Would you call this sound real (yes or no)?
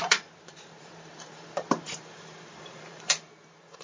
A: no